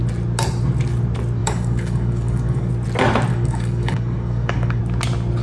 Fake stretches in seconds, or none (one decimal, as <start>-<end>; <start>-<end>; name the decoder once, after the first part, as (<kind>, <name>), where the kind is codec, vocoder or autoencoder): 1.4-2.7 (codec, DAC); 3.3-4.8